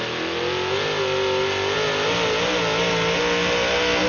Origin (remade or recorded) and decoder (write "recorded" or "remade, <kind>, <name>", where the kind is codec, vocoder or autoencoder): recorded